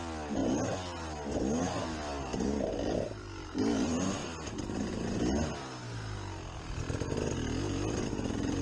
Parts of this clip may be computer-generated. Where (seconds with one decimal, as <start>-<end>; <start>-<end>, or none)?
none

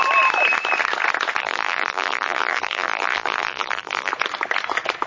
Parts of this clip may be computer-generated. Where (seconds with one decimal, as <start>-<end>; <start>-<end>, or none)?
1.4-4.1

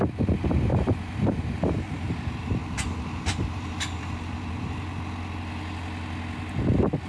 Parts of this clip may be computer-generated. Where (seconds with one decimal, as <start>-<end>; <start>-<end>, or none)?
0.7-5.0

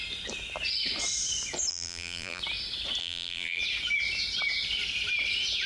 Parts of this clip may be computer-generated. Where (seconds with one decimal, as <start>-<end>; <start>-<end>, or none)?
1.7-2.4; 3.0-3.6

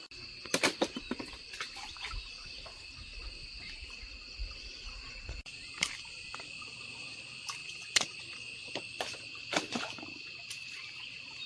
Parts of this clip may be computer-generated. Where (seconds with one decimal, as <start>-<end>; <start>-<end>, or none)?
none

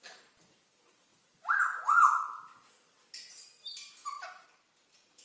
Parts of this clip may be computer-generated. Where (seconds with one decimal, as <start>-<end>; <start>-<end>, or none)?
none

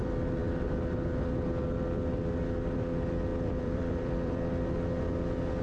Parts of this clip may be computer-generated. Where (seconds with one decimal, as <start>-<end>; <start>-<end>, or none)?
3.3-4.4